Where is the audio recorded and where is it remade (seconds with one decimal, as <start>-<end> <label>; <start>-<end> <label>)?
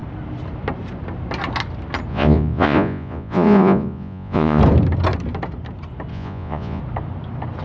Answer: 0.0-2.1 recorded; 2.1-4.6 remade; 4.6-6.1 recorded; 6.1-6.8 remade; 6.8-7.6 recorded